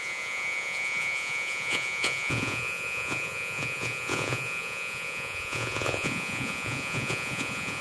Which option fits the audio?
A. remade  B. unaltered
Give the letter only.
A